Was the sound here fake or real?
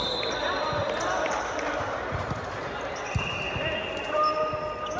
real